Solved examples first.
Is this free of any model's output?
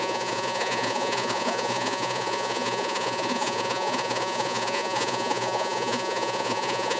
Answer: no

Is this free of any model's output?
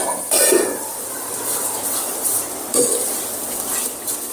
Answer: no